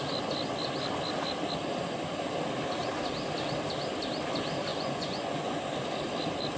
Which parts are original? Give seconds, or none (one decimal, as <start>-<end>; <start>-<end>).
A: 0.0-4.7; 5.6-6.6